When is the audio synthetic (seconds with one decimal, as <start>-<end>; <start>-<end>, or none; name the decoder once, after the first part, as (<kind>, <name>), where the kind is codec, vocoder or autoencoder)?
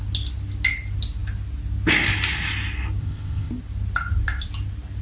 3.0-3.5 (codec, ZipCodec)